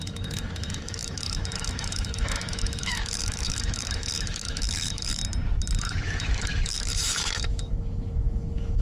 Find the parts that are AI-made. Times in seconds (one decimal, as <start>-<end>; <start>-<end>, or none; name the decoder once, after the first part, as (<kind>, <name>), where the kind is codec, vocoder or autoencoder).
0.0-5.2 (autoencoder, DAC-VAE); 5.8-8.8